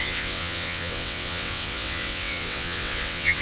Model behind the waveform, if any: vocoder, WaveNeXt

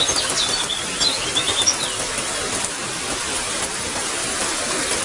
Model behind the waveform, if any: none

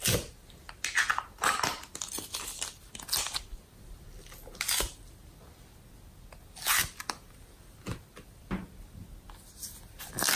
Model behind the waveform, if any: none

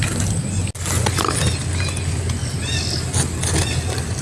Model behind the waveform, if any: none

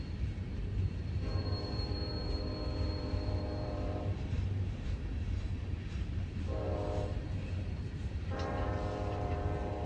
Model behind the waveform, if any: vocoder, BigVGAN v2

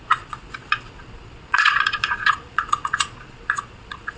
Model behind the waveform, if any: vocoder, Vocos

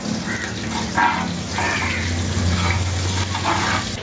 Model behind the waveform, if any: none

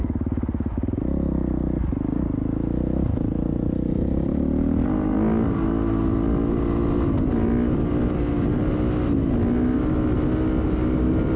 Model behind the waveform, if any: none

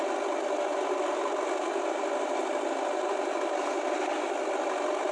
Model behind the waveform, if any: none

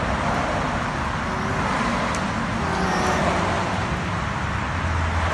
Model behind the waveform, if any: none